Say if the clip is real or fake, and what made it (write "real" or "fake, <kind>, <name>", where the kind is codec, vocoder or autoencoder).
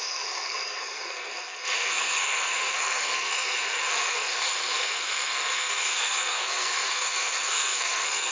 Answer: fake, codec, SNAC